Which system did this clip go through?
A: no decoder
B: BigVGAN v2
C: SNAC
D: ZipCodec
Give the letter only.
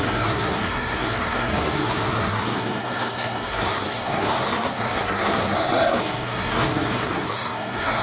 C